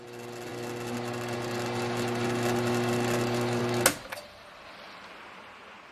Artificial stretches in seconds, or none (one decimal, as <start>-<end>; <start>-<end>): none